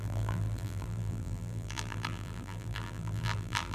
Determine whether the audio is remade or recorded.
remade